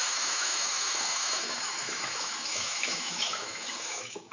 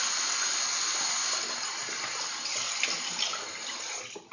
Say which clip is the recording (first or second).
second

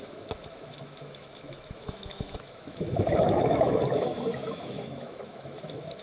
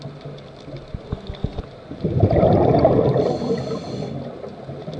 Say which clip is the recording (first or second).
second